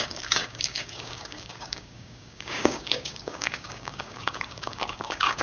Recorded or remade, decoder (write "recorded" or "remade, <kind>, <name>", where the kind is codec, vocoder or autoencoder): remade, codec, DAC